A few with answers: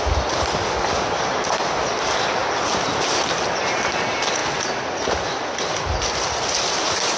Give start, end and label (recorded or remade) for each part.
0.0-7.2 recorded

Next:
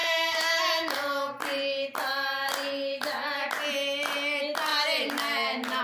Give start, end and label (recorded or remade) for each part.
0.0-5.8 recorded

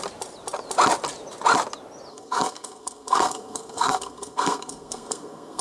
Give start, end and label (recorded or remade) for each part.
0.0-2.1 recorded; 2.1-5.6 remade

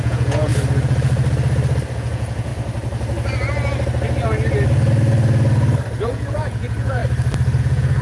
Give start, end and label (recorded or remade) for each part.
0.0-0.5 remade; 0.5-1.9 recorded; 1.9-2.5 remade; 2.5-6.0 recorded; 6.0-7.0 remade; 7.0-7.6 recorded; 7.6-8.0 remade

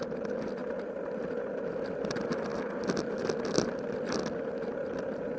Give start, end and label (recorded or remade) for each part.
0.0-5.4 recorded

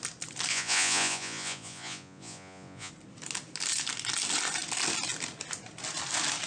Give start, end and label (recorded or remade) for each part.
0.0-0.5 recorded; 0.5-2.9 remade; 2.9-6.5 recorded

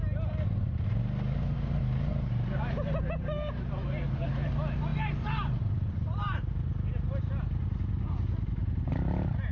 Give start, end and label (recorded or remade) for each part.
0.0-2.1 recorded; 2.1-4.5 remade; 4.5-4.9 recorded; 4.9-6.4 remade; 6.4-9.5 recorded